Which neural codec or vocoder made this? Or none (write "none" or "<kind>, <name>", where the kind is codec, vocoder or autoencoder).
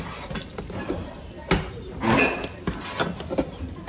none